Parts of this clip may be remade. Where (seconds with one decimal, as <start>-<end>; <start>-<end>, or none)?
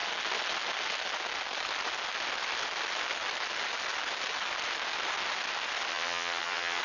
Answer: 5.9-6.8